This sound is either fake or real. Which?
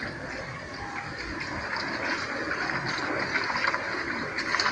real